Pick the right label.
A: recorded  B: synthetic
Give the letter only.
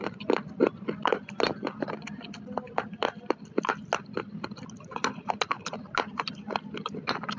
A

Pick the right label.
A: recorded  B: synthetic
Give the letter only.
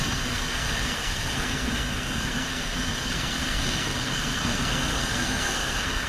B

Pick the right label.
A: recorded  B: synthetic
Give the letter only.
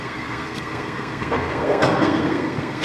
B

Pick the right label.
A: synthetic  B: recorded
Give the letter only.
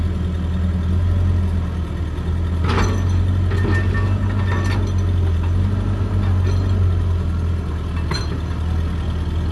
B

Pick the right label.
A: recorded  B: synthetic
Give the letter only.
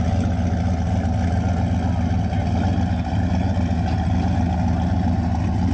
A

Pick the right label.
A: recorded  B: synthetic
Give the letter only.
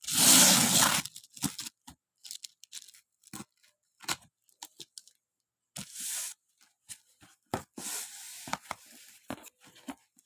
A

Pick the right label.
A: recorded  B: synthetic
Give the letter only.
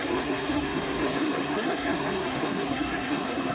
B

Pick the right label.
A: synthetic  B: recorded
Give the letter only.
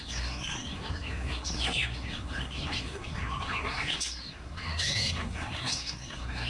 A